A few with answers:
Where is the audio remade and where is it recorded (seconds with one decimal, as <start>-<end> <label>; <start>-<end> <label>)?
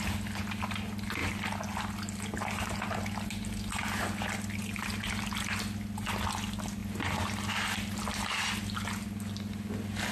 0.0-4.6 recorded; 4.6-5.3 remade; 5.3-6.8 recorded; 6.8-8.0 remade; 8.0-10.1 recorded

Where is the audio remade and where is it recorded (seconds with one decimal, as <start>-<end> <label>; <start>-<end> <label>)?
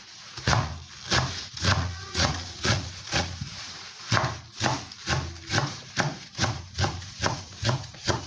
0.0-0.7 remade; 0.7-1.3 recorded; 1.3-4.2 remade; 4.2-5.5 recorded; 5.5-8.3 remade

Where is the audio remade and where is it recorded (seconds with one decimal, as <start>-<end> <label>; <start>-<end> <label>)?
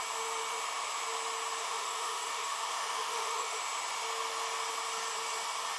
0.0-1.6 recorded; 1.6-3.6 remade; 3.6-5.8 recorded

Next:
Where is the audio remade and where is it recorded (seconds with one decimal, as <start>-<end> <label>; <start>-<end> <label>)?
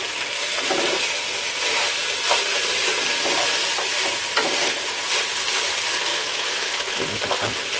0.0-6.1 recorded; 6.1-7.2 remade; 7.2-7.8 recorded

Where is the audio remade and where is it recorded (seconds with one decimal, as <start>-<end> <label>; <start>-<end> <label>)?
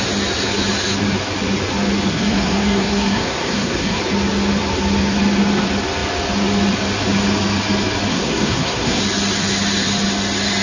0.0-2.1 recorded; 2.1-4.0 remade; 4.0-8.1 recorded; 8.1-9.0 remade; 9.0-10.6 recorded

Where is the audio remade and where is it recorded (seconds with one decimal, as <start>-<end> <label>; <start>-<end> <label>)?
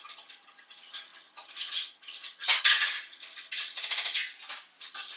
0.0-4.2 remade; 4.2-4.8 recorded; 4.8-5.2 remade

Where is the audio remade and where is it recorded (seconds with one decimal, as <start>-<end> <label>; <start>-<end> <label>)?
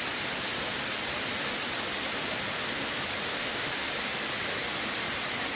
0.0-3.3 recorded; 3.3-3.9 remade; 3.9-5.6 recorded